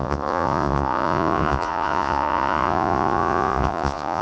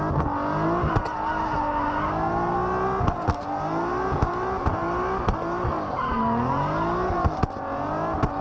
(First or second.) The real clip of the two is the second